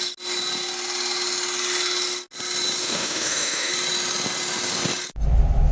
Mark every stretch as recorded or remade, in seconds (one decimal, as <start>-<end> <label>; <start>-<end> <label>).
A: 0.0-2.8 recorded; 2.8-3.7 remade; 3.7-5.7 recorded